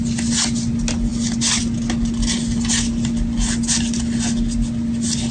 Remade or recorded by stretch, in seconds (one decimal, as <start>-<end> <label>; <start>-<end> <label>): 0.0-5.3 recorded

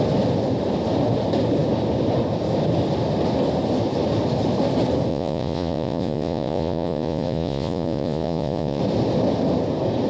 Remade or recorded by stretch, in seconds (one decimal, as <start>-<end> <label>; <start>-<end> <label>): 0.0-5.1 recorded; 5.1-8.8 remade; 8.8-10.1 recorded